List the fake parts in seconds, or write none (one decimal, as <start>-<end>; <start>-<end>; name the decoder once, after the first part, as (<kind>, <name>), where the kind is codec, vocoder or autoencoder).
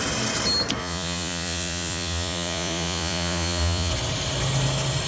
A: 0.8-3.9 (vocoder, Vocos)